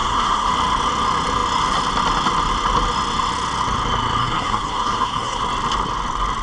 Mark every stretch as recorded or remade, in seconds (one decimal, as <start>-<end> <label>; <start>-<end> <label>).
0.0-0.5 remade; 0.5-4.2 recorded; 4.2-5.4 remade; 5.4-6.4 recorded